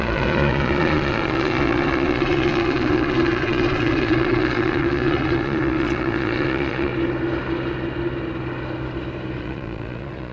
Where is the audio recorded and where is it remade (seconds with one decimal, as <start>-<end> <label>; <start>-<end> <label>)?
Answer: 0.0-6.9 remade; 6.9-9.4 recorded; 9.4-10.3 remade